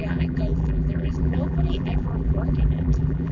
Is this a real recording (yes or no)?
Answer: no